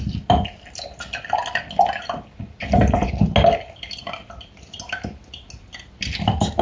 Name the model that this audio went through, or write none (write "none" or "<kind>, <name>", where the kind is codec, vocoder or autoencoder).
none